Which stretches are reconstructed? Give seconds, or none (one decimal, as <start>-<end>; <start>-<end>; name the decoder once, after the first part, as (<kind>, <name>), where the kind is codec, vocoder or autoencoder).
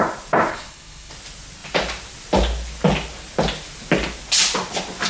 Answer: 0.5-1.1 (codec, HILCodec)